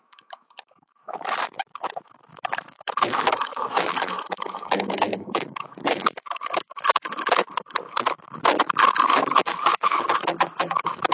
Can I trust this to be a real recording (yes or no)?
no